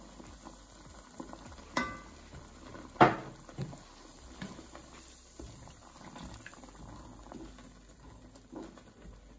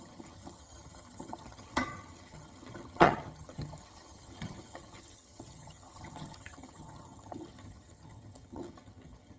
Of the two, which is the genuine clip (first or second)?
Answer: first